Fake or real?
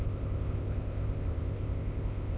fake